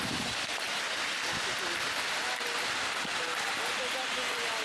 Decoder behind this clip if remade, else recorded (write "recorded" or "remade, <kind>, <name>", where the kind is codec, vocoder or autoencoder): recorded